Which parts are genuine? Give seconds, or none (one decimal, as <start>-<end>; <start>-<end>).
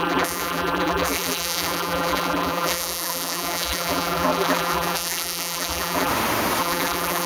6.1-6.6